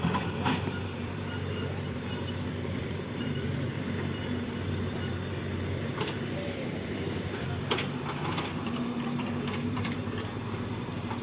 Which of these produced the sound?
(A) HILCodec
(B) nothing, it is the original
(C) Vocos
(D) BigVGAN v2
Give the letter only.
D